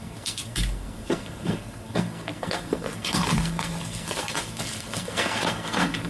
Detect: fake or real fake